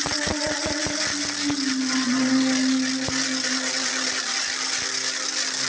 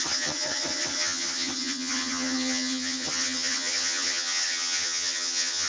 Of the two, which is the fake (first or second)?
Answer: second